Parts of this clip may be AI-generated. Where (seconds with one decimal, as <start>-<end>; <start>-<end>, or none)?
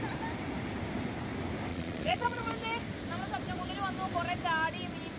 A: 1.7-2.4